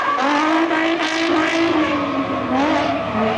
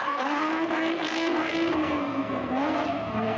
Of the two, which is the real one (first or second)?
first